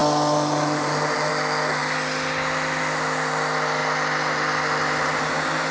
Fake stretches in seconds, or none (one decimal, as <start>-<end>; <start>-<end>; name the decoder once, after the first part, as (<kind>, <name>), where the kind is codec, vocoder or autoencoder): none